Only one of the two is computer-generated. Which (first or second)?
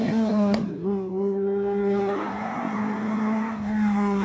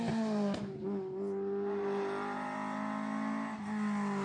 first